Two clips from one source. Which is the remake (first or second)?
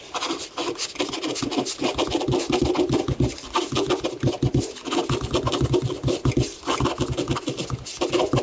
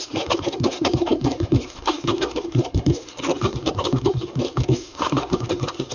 second